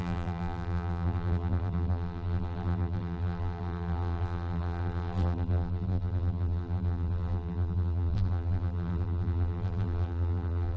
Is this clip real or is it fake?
fake